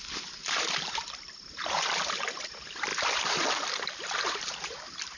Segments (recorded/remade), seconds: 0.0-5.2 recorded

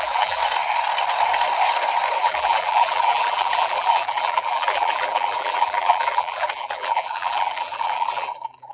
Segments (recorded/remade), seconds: 0.0-0.4 remade; 0.4-2.2 recorded; 2.2-8.7 remade

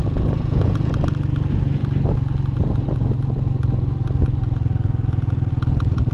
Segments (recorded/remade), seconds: 0.0-0.9 remade; 0.9-6.1 recorded

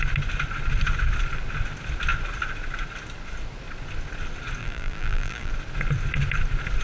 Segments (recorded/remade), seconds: 0.0-4.6 recorded; 4.6-5.5 remade; 5.5-6.8 recorded

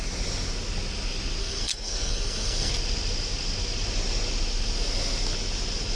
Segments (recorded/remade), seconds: 0.0-1.4 recorded; 1.4-2.7 remade; 2.7-6.0 recorded